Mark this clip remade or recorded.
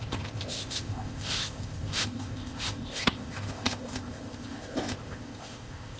remade